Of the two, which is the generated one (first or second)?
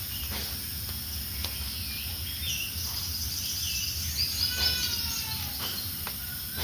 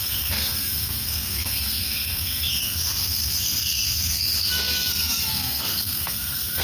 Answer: second